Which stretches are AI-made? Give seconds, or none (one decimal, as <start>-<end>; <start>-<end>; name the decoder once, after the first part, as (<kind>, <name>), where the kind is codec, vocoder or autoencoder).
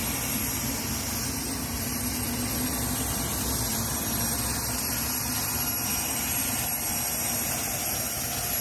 none